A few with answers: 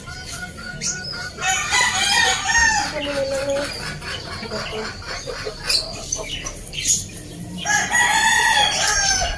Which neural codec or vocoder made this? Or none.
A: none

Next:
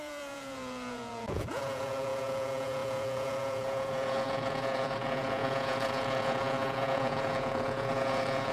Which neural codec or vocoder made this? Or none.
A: vocoder, Vocos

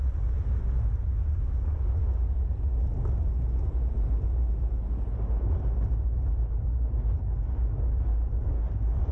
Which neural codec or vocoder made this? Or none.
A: none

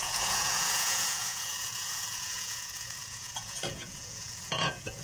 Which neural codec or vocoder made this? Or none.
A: vocoder, Vocos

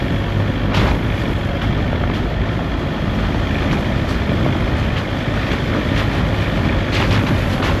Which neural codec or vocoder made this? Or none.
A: none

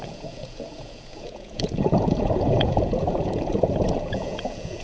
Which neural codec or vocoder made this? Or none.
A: vocoder, Vocos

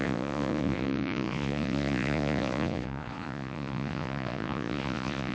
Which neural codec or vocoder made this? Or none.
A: vocoder, Vocos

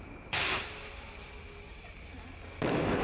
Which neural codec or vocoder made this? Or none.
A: none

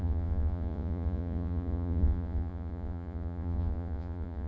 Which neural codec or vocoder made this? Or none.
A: vocoder, Vocos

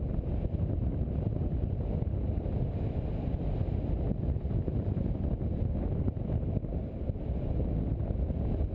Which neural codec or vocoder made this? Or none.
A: none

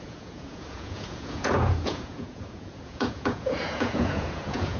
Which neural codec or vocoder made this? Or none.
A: vocoder, Vocos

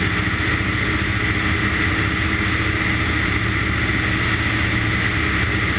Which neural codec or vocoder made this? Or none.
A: none